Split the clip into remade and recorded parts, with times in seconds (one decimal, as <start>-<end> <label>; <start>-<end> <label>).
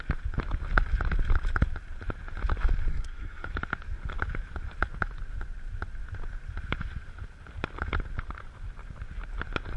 0.0-2.9 recorded; 2.9-3.5 remade; 3.5-9.8 recorded